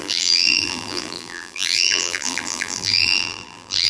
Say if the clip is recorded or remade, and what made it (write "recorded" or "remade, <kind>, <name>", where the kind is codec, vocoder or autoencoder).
remade, vocoder, BigVGAN v2